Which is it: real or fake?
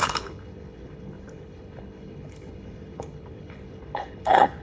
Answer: fake